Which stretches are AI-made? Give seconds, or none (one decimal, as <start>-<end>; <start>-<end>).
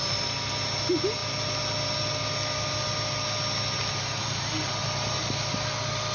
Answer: none